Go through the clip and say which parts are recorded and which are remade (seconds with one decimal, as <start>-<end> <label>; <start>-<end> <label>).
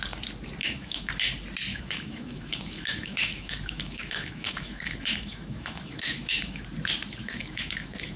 0.0-0.6 recorded; 0.6-1.1 remade; 1.1-1.7 recorded; 1.7-6.6 remade; 6.6-7.2 recorded; 7.2-8.2 remade